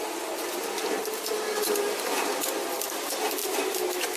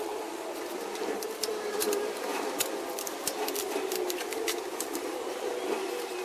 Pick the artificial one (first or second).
second